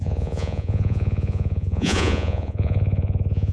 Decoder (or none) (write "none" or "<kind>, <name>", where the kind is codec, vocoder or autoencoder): vocoder, Vocos